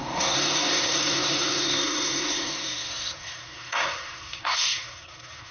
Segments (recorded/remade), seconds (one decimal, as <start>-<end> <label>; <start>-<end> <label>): 0.0-5.5 remade